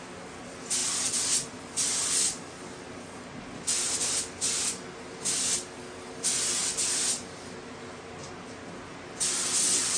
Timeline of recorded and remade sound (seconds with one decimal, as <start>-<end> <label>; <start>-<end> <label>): 0.0-10.0 recorded